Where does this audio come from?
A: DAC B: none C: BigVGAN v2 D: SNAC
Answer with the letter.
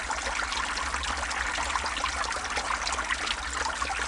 B